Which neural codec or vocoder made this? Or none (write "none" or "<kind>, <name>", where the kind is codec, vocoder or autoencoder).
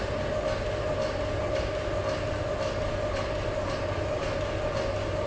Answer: none